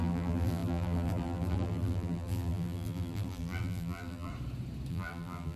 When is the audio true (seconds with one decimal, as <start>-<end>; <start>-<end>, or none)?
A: 4.3-4.9